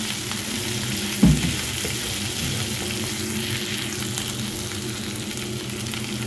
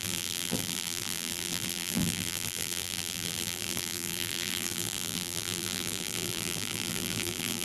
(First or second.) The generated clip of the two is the second